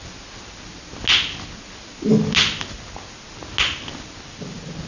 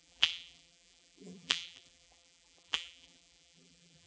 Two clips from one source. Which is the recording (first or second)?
first